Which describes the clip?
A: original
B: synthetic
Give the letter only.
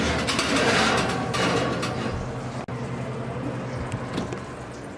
A